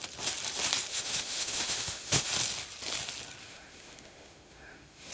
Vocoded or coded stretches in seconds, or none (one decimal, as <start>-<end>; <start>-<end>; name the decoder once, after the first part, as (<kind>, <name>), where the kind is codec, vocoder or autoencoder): 0.9-2.3 (autoencoder, DAC-VAE); 3.4-5.1